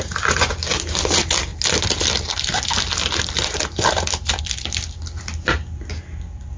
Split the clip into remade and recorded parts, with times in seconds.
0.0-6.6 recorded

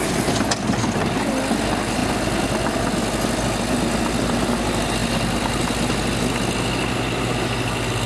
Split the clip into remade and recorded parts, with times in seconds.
0.0-8.1 recorded

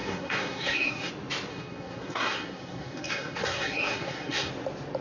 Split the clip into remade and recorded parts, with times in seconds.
0.0-1.1 remade; 1.1-1.5 recorded; 1.5-4.5 remade; 4.5-5.0 recorded

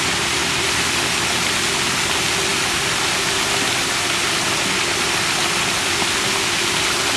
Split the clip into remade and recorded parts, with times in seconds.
0.0-7.2 recorded

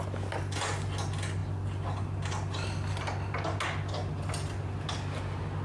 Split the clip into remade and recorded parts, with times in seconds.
0.0-5.6 recorded

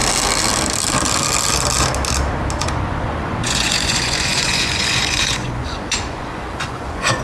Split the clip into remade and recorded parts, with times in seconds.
0.0-2.6 recorded; 2.6-7.2 remade